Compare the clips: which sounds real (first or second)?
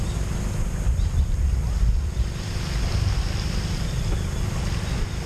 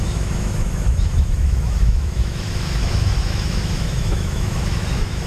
first